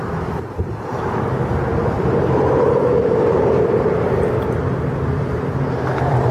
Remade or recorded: remade